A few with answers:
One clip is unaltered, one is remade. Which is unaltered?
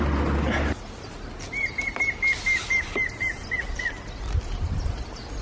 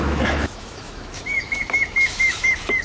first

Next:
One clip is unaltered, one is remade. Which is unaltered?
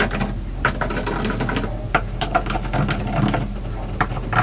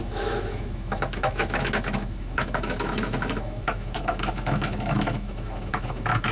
first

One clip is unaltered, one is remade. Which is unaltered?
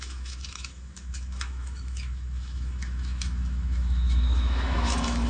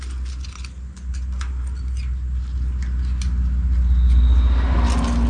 second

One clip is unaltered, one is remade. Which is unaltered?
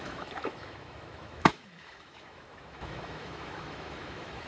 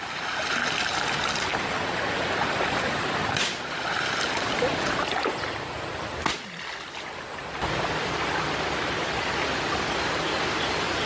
second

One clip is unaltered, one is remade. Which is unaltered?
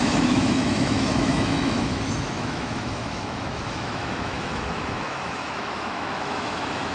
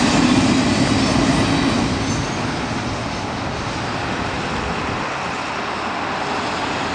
second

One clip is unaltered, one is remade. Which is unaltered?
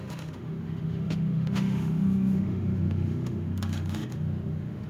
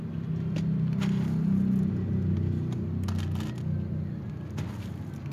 second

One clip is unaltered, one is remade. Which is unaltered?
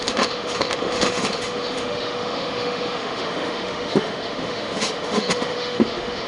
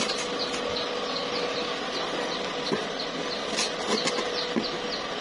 second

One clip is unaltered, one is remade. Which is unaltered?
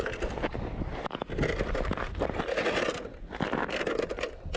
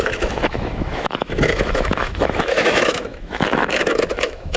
first